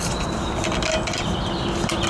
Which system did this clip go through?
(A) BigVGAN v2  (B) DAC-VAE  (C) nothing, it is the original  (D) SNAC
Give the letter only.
C